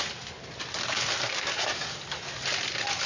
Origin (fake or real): real